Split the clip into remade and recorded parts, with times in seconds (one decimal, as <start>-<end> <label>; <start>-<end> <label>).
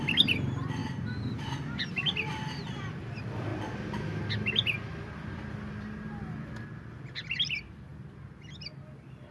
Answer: 0.0-0.8 remade; 0.8-1.4 recorded; 1.4-3.5 remade; 3.5-4.2 recorded; 4.2-9.3 remade